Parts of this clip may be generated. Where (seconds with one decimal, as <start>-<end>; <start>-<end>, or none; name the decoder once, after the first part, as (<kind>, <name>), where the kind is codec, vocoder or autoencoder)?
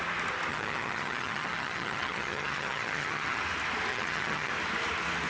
0.5-3.4 (vocoder, HiFi-GAN); 3.9-4.5